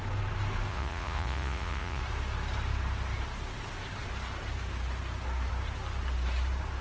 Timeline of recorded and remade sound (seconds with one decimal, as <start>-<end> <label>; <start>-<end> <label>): 0.0-0.7 recorded; 0.7-2.0 remade; 2.0-6.8 recorded

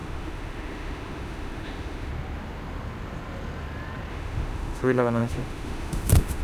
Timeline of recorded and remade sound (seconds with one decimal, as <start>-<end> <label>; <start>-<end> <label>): 0.0-2.1 remade; 2.1-4.1 recorded; 4.1-6.4 remade

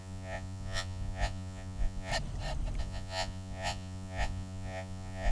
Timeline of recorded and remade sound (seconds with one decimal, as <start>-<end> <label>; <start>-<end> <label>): 0.0-2.1 remade; 2.1-2.8 recorded; 2.8-5.3 remade